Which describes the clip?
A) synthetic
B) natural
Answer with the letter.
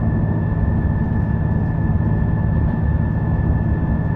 B